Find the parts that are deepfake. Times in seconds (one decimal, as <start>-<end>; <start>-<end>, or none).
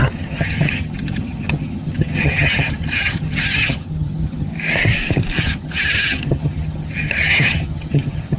0.0-4.5; 5.4-8.4